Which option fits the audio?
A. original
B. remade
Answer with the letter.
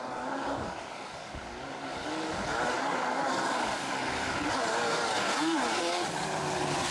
B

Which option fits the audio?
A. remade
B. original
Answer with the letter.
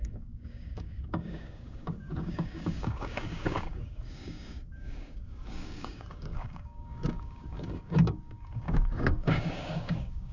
A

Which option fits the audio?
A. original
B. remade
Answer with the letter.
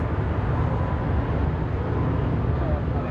A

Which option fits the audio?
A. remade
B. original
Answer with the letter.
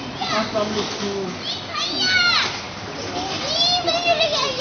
B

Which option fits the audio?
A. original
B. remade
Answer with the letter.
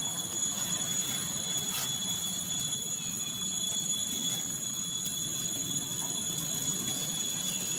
A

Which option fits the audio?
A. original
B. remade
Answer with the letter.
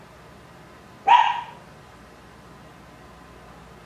A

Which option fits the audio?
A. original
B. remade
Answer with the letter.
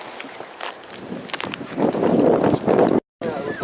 A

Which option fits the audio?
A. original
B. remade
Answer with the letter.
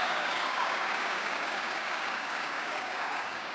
B